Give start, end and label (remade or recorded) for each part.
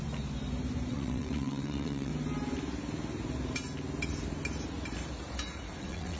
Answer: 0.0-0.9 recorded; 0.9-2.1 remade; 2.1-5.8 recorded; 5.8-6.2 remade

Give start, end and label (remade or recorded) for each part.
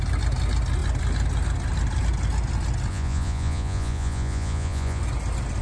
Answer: 0.0-2.9 recorded; 2.9-5.0 remade; 5.0-5.6 recorded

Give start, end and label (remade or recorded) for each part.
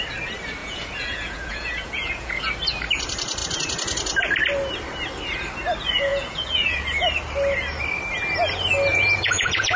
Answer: 0.0-0.6 recorded; 0.6-2.4 remade; 2.4-6.1 recorded; 6.1-6.8 remade; 6.8-8.9 recorded; 8.9-9.8 remade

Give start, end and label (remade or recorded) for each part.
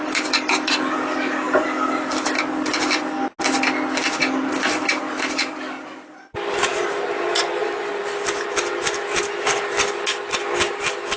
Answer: 0.0-11.2 recorded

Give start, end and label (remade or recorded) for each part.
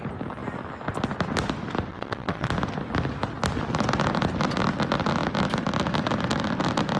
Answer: 0.0-1.9 recorded; 1.9-2.5 remade; 2.5-7.0 recorded